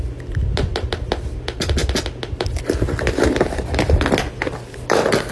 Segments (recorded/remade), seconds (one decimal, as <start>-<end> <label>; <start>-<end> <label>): 0.0-5.3 recorded